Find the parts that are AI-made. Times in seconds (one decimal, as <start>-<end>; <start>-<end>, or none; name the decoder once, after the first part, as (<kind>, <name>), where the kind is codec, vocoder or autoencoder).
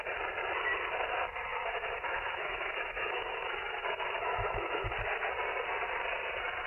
1.5-4.9 (autoencoder, DAC-VAE)